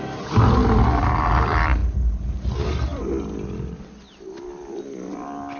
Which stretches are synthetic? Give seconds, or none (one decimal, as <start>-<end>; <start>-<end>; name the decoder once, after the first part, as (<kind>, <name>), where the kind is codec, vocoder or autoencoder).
none